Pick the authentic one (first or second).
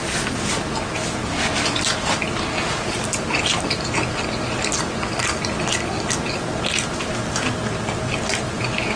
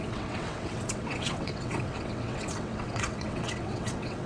first